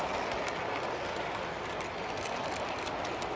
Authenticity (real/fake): real